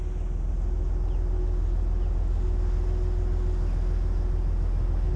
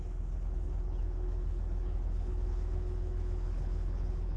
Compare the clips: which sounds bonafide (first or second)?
first